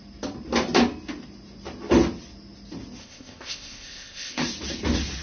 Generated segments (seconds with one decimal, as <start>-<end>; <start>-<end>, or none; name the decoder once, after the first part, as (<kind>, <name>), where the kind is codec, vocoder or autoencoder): 3.0-4.4 (codec, ZipCodec)